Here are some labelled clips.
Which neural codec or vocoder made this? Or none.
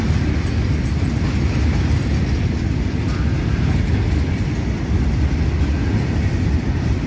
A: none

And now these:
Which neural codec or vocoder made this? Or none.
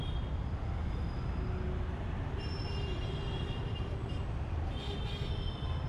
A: none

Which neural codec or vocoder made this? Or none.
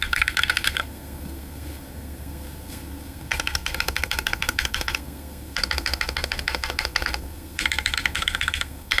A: codec, SNAC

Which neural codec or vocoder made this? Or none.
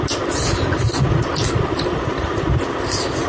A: none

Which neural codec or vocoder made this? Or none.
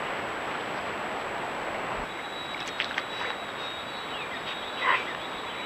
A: none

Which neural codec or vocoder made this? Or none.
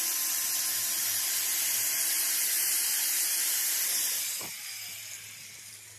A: none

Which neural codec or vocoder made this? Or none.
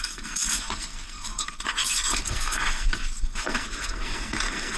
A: codec, SNAC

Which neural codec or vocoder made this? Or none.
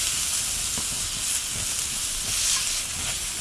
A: none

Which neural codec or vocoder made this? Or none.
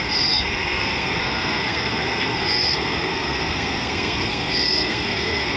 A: codec, SNAC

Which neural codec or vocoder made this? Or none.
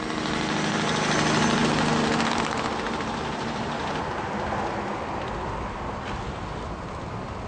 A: none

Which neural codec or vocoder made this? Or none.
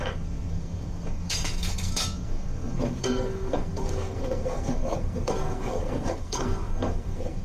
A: codec, SNAC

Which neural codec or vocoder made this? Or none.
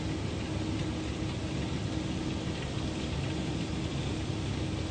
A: none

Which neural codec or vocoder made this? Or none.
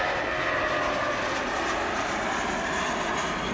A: none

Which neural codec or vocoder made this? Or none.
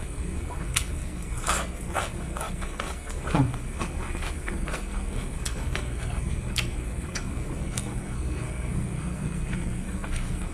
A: codec, SNAC